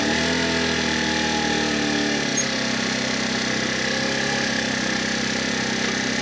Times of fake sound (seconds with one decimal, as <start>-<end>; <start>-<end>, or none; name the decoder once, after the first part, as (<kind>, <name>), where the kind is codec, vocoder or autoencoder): none